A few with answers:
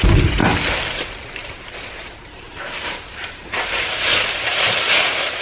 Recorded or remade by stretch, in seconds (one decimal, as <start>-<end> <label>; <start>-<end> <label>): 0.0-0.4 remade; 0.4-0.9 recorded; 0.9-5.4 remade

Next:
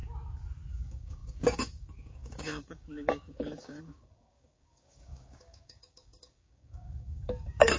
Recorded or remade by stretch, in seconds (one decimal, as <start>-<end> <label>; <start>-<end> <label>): 0.0-0.7 recorded; 0.7-7.8 remade

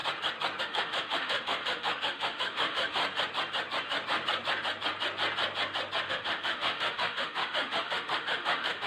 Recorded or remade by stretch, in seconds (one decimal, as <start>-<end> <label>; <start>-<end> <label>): 0.0-0.6 recorded; 0.6-3.0 remade; 3.0-6.1 recorded; 6.1-8.9 remade

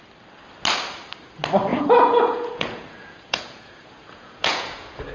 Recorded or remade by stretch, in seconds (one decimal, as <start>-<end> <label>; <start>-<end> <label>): 0.0-1.7 recorded; 1.7-5.1 remade